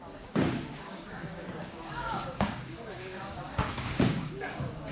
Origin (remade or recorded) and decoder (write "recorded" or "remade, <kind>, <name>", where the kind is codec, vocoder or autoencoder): remade, codec, DAC